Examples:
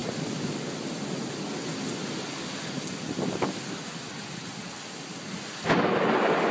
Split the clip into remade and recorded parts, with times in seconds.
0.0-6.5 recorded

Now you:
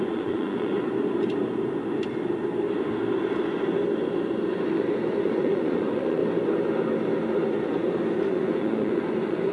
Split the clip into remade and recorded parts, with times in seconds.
0.0-0.7 remade; 0.7-5.2 recorded; 5.2-6.2 remade; 6.2-8.3 recorded; 8.3-9.5 remade

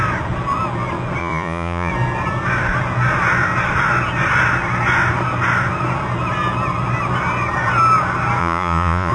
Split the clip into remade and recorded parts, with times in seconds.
0.0-1.2 recorded; 1.2-1.9 remade; 1.9-8.4 recorded; 8.4-9.1 remade

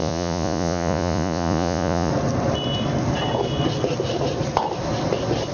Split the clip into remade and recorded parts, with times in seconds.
0.0-2.1 remade; 2.1-5.5 recorded

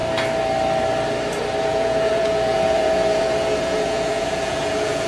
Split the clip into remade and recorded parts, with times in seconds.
0.0-1.7 recorded; 1.7-5.1 remade

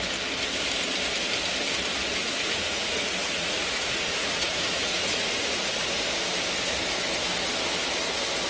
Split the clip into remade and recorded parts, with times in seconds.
0.0-2.2 recorded; 2.2-6.0 remade; 6.0-8.5 recorded